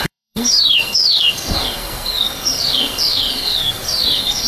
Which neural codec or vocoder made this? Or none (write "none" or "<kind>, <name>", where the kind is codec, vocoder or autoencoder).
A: codec, SNAC